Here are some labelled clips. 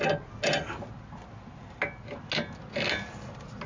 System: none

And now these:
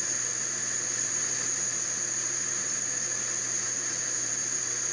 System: none